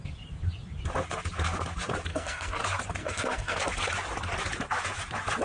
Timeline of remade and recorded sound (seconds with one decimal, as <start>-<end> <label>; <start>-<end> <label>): 0.0-2.1 recorded; 2.1-2.6 remade; 2.6-3.0 recorded; 3.0-3.6 remade; 3.6-5.4 recorded